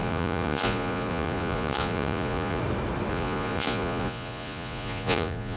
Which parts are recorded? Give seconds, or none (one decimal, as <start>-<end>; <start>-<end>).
2.6-3.1